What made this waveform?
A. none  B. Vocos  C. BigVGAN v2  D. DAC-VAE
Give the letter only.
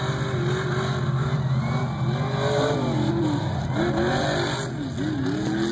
A